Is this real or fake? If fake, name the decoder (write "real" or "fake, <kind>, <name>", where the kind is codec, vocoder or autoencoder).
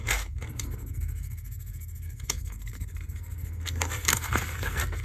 fake, codec, SNAC